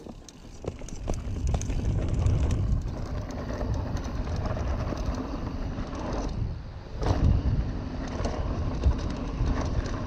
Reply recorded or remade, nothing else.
remade